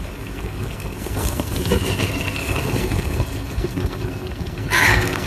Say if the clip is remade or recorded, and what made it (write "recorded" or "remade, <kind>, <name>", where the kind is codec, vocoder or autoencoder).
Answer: remade, codec, SNAC